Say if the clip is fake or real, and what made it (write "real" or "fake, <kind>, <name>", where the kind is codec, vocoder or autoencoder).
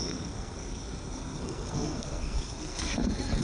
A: fake, codec, SNAC